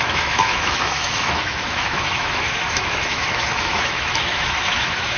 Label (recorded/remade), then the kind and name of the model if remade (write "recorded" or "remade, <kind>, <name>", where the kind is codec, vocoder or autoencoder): remade, autoencoder, DAC-VAE